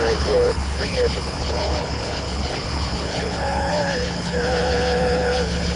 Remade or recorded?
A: remade